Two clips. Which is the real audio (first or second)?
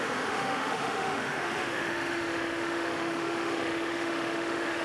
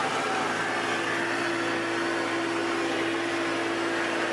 second